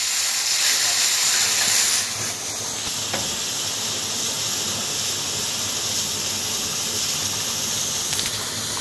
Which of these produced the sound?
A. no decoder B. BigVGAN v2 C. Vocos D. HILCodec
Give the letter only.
A